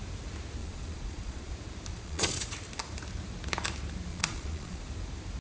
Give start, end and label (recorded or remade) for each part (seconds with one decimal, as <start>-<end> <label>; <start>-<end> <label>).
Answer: 0.0-0.6 recorded; 0.6-1.5 remade; 1.5-1.9 recorded; 1.9-2.5 remade; 2.5-4.1 recorded; 4.1-4.8 remade; 4.8-5.4 recorded